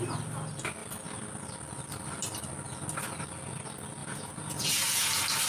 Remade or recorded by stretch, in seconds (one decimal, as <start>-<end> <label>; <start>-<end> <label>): 0.0-4.0 recorded; 4.0-5.1 remade; 5.1-5.5 recorded